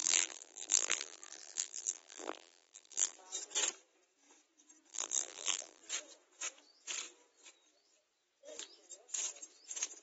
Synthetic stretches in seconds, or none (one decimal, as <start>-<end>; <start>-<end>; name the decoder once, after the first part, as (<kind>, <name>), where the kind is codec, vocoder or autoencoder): 0.0-3.2 (vocoder, BigVGAN v2); 4.9-5.8